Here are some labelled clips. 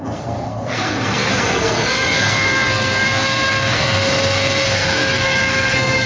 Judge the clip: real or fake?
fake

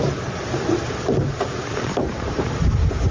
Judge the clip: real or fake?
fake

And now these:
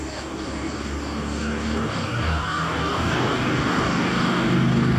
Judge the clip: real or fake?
fake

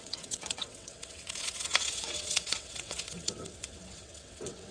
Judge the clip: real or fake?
fake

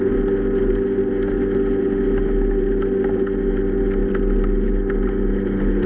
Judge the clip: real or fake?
real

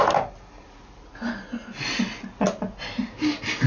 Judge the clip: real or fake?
real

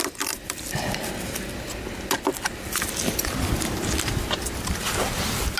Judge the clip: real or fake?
real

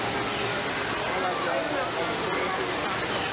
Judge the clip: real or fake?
real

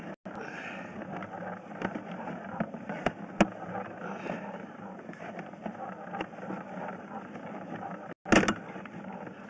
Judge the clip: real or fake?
real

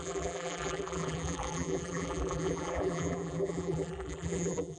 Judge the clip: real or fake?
fake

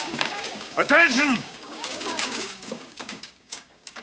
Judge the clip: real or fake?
fake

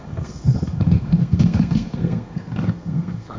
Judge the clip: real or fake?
fake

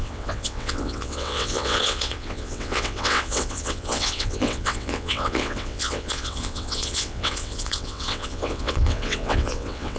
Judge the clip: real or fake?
fake